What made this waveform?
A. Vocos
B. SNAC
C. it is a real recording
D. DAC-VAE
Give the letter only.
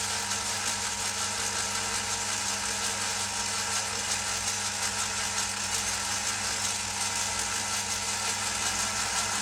C